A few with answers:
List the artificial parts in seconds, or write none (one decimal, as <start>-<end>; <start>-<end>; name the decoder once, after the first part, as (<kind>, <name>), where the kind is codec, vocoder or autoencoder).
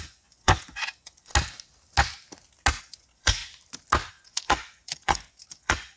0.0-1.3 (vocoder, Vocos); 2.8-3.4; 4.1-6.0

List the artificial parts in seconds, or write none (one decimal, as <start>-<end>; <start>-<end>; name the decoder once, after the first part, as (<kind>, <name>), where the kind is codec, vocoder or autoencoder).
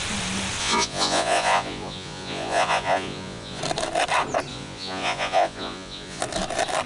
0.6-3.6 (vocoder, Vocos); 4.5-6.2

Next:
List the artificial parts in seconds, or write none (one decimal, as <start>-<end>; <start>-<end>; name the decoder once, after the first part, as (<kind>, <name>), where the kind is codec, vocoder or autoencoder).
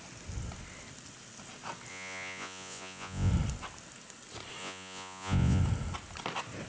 1.9-3.3 (vocoder, Vocos); 4.6-5.6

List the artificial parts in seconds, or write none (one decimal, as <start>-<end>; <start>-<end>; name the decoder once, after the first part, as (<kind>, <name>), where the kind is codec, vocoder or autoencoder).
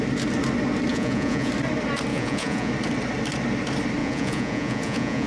0.9-1.5 (vocoder, Vocos); 2.1-2.7; 4.0-5.3